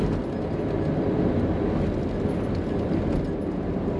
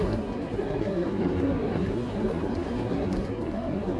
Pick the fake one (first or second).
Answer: second